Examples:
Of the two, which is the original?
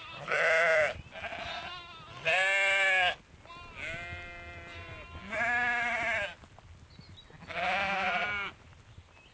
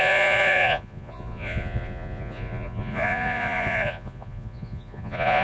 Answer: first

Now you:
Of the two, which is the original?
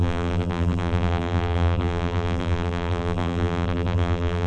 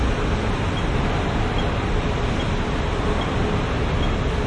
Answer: second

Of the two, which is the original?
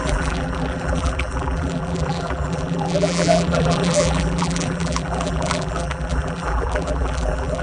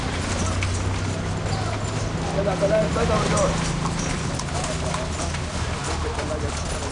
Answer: second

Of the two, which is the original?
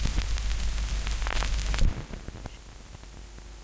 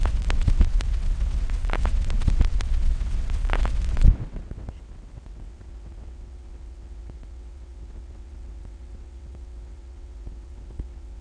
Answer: first